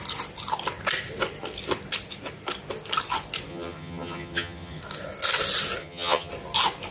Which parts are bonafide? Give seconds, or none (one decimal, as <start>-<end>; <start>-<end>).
0.0-3.5; 4.8-5.8; 6.3-6.9